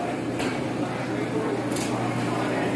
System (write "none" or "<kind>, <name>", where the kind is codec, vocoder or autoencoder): none